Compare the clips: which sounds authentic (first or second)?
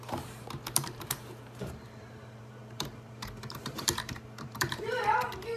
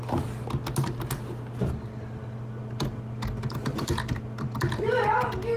second